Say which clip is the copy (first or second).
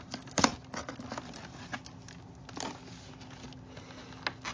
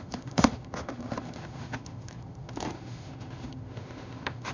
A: second